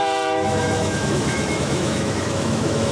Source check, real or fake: fake